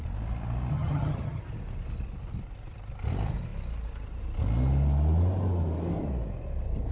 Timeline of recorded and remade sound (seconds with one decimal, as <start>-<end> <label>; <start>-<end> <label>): 0.0-0.7 recorded; 0.7-1.4 remade; 1.4-6.9 recorded